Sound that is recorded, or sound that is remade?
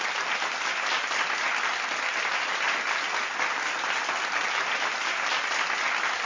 recorded